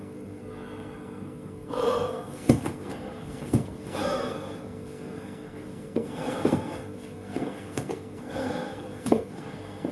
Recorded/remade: remade